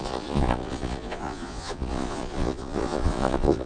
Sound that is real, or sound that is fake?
fake